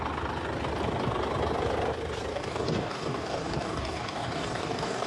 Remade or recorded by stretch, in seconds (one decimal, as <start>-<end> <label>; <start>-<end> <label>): 0.0-2.3 recorded; 2.3-5.1 remade